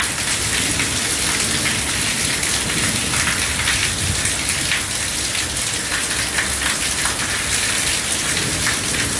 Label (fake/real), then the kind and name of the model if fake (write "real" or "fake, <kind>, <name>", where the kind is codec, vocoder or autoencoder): real